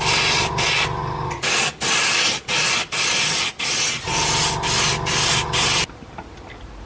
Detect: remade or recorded recorded